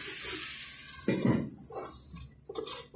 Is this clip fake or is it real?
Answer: real